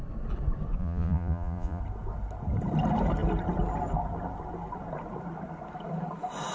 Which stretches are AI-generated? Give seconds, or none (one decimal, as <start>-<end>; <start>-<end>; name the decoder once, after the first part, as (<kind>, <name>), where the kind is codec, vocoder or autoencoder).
0.8-1.8 (vocoder, Vocos)